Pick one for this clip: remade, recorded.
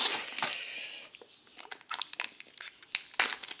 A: recorded